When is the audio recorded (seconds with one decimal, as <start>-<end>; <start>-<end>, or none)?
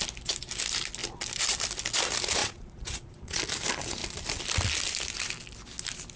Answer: 0.0-2.4; 3.4-6.2